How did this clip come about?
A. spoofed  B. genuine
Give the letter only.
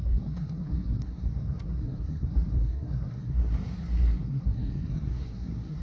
A